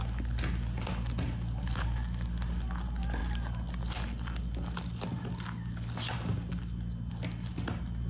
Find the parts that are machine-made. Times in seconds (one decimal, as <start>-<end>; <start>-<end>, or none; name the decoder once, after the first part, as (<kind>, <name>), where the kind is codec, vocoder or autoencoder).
none